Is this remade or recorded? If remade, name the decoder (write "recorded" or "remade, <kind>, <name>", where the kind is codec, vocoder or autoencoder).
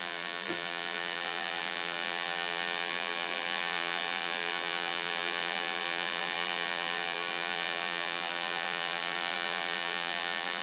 remade, vocoder, BigVGAN v2